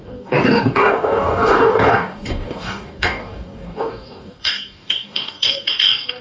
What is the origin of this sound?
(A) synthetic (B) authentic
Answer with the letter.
A